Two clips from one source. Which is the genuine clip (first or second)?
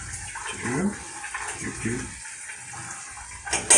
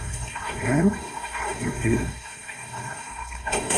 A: first